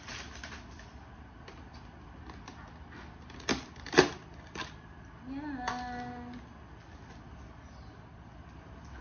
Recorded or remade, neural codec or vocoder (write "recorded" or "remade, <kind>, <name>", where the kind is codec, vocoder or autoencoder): recorded